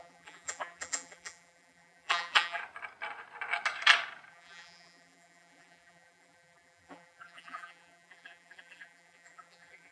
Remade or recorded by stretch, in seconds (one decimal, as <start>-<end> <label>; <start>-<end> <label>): 0.0-2.6 remade; 2.6-4.3 recorded; 4.3-9.9 remade